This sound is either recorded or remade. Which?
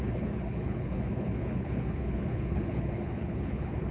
remade